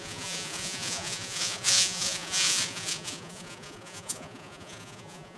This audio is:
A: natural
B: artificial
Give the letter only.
B